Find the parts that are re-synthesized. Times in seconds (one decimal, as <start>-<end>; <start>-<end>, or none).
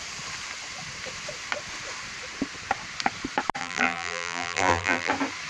3.6-5.1